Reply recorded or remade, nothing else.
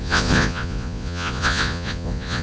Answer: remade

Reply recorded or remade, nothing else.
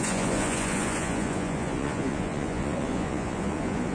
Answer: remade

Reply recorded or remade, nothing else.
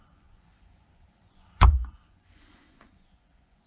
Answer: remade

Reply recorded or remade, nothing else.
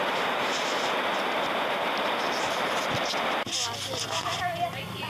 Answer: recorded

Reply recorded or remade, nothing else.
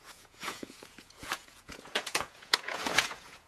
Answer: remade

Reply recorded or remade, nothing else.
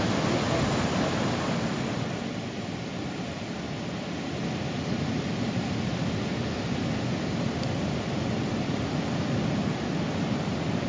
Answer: recorded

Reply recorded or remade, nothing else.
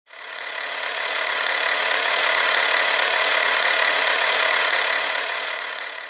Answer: remade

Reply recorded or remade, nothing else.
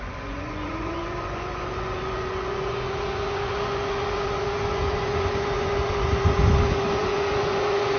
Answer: remade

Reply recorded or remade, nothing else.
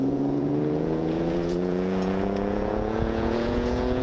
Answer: remade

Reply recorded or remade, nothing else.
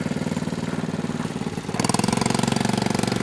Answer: recorded